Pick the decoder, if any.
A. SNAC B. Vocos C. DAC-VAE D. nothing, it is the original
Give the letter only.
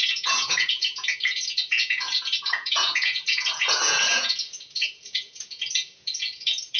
B